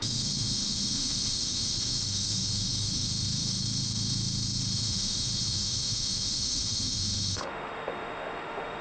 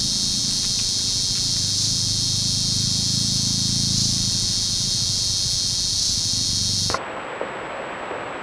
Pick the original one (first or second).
second